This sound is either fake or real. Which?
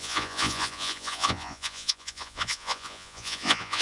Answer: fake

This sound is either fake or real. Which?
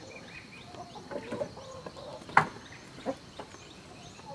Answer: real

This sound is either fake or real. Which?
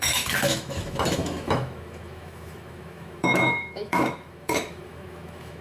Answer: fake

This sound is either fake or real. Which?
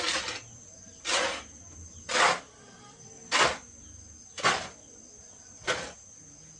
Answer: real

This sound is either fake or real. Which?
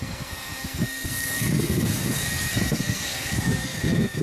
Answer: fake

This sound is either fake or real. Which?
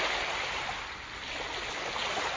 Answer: real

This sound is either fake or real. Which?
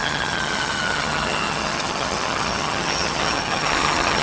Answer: fake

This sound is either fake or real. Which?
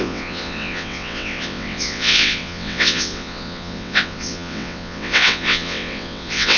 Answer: fake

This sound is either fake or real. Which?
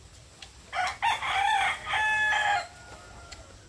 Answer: real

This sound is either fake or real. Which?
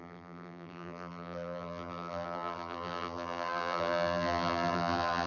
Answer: fake